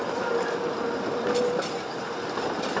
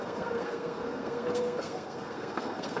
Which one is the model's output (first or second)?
second